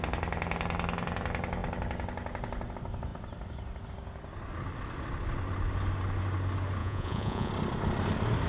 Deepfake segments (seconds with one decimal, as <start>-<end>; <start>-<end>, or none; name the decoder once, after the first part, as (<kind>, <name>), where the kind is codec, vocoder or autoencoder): 6.8-7.5 (vocoder, Vocos)